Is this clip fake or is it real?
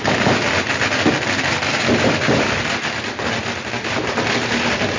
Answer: real